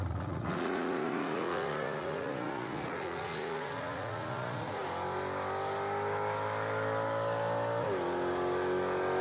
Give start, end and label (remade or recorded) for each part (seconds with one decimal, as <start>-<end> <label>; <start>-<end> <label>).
0.0-4.8 remade; 4.8-9.2 recorded